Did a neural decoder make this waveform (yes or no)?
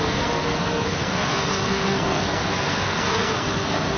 yes